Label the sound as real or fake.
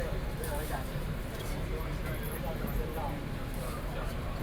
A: fake